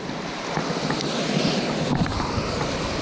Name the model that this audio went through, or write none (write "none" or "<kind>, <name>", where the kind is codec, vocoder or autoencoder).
none